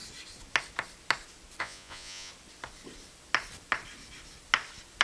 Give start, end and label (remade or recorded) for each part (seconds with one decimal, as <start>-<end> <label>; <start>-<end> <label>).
0.0-1.6 recorded; 1.6-2.3 remade; 2.3-5.0 recorded